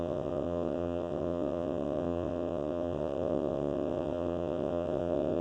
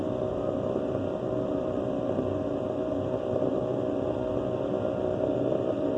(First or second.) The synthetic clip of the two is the first